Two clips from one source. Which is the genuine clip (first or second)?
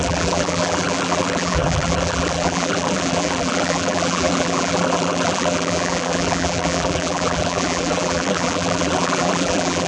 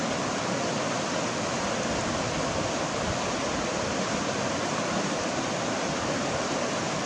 second